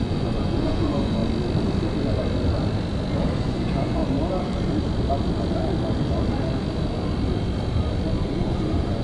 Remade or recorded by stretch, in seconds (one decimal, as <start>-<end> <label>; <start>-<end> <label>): 0.0-1.2 remade; 1.2-3.2 recorded; 3.2-4.0 remade; 4.0-8.2 recorded; 8.2-9.0 remade